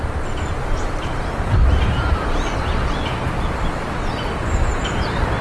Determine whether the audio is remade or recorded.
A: recorded